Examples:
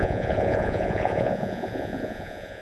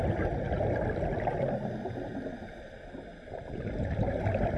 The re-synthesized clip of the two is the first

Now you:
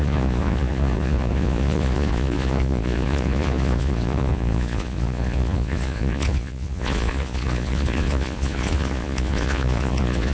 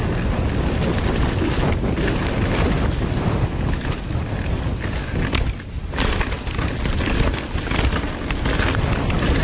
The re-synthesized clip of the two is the first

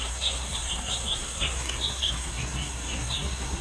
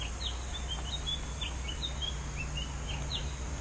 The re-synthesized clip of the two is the first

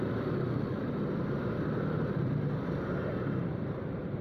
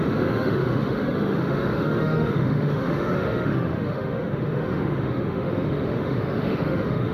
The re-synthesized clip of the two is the second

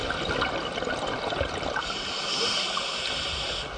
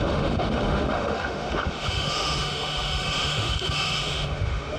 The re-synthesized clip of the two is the second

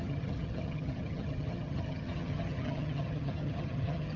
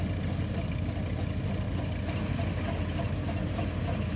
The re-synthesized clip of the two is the first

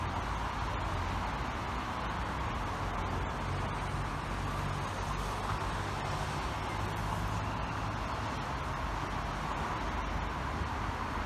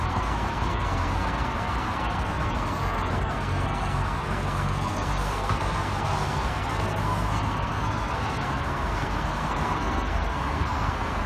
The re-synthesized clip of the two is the second